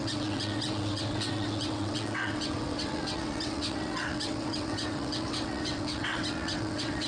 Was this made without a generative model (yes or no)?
no